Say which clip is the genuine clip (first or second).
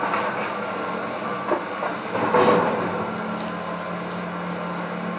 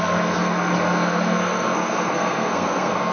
first